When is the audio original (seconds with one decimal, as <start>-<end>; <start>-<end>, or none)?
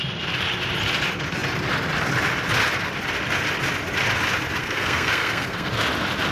0.0-4.6; 5.7-6.3